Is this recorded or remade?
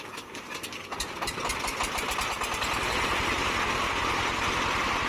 recorded